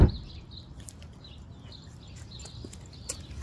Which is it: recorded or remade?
recorded